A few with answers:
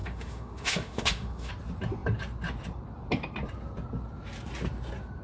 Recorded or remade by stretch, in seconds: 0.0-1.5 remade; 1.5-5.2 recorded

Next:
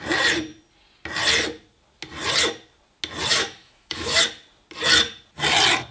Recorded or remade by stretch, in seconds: 0.0-3.3 recorded; 3.3-4.2 remade; 4.2-5.9 recorded

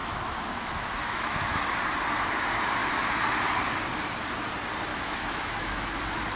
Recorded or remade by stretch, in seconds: 0.0-1.5 remade; 1.5-4.9 recorded; 4.9-6.0 remade; 6.0-6.4 recorded